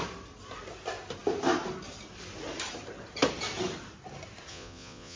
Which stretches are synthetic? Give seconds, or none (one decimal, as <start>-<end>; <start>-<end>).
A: 4.5-5.2